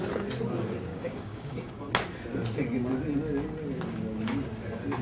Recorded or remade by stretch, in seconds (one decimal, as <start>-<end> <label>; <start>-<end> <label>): 0.0-0.9 recorded; 0.9-1.9 remade; 1.9-5.0 recorded

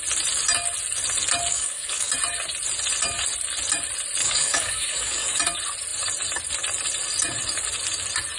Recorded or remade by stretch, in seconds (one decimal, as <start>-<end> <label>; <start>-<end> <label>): 0.0-1.5 recorded; 1.5-2.1 remade; 2.1-4.2 recorded; 4.2-5.4 remade; 5.4-8.4 recorded

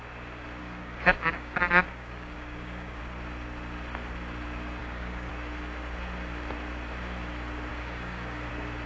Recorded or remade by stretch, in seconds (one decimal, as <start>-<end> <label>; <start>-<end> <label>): 0.0-0.6 recorded; 0.6-3.0 remade; 3.0-4.8 recorded; 4.8-5.3 remade; 5.3-7.7 recorded; 7.7-8.5 remade; 8.5-8.9 recorded

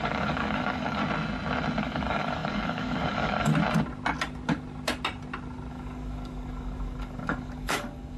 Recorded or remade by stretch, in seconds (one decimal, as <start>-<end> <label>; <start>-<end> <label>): 0.0-1.0 remade; 1.0-1.8 recorded; 1.8-3.5 remade; 3.5-5.7 recorded; 5.7-8.2 remade

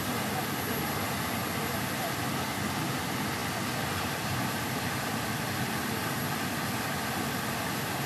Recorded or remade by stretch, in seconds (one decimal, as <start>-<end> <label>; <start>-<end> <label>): 0.0-8.1 recorded

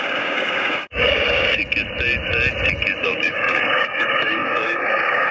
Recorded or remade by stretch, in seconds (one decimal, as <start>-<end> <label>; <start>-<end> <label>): 0.0-1.6 remade; 1.6-3.0 recorded; 3.0-5.3 remade

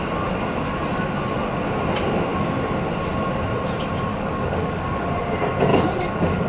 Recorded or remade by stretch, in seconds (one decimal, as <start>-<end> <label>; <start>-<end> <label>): 0.0-4.1 recorded; 4.1-5.0 remade; 5.0-5.7 recorded; 5.7-6.5 remade